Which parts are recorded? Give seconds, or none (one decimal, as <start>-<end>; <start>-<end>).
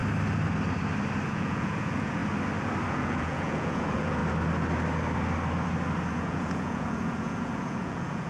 0.0-1.3; 2.2-2.9; 4.2-6.1